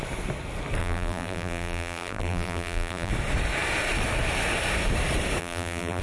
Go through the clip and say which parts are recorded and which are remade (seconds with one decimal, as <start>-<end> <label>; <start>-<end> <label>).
0.0-0.8 recorded; 0.8-3.1 remade; 3.1-5.4 recorded; 5.4-6.0 remade